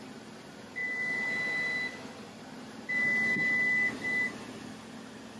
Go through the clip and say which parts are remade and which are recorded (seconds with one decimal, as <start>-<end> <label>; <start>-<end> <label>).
0.0-5.4 recorded